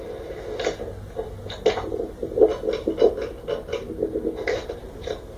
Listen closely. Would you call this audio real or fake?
real